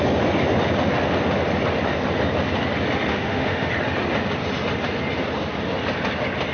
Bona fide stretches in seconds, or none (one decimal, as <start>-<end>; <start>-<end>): 0.0-3.1; 3.7-6.5